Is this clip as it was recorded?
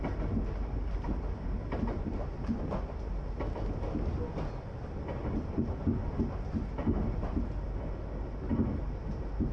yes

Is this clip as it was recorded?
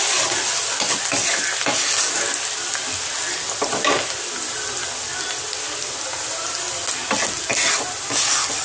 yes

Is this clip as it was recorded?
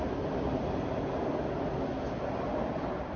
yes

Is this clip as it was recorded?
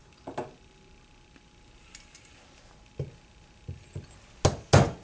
yes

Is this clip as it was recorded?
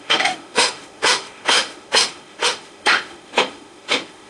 no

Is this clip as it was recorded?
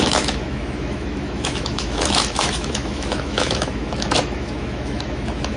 no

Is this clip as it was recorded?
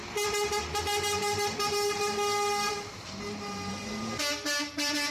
yes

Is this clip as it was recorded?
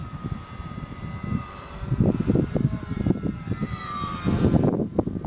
no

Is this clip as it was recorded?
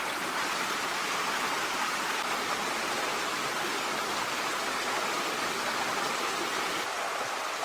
yes